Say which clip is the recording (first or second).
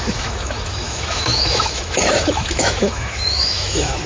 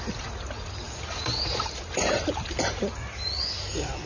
second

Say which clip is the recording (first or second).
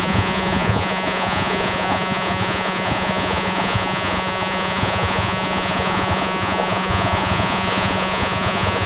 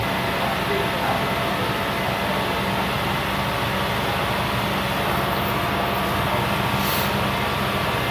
second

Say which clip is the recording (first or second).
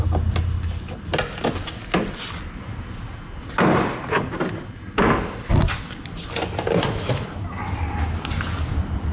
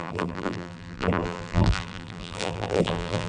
first